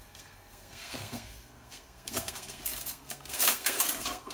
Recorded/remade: remade